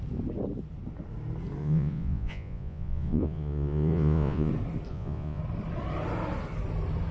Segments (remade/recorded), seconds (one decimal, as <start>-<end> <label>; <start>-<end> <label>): 0.0-1.6 recorded; 1.6-4.5 remade; 4.5-4.9 recorded; 4.9-5.4 remade; 5.4-7.1 recorded